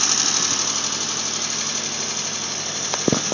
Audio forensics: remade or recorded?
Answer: recorded